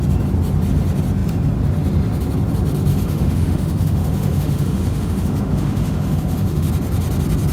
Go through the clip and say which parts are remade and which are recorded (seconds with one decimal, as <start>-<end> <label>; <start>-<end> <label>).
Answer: 0.0-2.9 recorded; 2.9-6.7 remade; 6.7-7.5 recorded